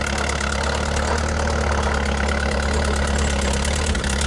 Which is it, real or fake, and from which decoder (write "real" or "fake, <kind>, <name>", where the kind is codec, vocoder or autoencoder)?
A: real